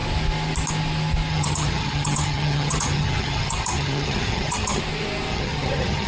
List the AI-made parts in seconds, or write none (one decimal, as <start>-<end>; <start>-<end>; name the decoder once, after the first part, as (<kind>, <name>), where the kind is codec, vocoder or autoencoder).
1.3-4.8 (vocoder, HiFi-GAN); 5.3-6.1